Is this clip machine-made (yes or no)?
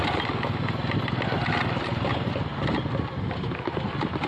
no